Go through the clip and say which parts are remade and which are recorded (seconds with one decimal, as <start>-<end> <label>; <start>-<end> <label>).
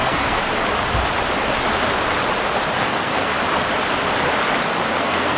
0.0-0.4 remade; 0.4-2.8 recorded; 2.8-3.3 remade; 3.3-4.9 recorded; 4.9-5.4 remade